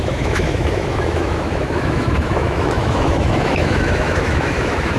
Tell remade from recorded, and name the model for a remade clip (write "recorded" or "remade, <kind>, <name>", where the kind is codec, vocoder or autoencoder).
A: remade, autoencoder, DAC-VAE